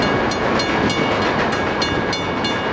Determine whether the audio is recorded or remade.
recorded